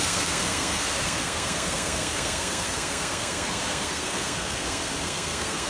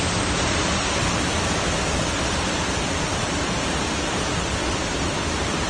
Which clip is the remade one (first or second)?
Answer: first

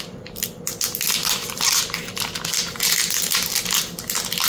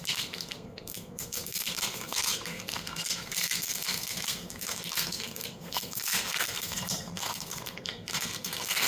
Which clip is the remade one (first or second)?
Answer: second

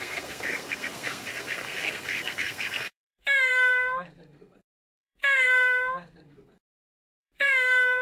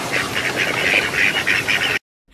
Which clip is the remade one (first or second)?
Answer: first